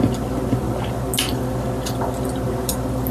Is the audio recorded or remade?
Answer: recorded